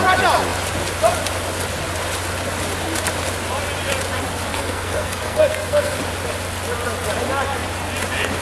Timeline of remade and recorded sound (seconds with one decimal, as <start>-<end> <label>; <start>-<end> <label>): 0.0-4.5 recorded; 4.5-6.0 remade; 6.0-8.4 recorded